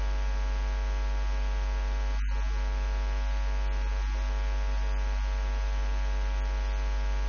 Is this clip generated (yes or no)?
no